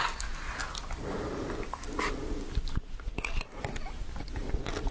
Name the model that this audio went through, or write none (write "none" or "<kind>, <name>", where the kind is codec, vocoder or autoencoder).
none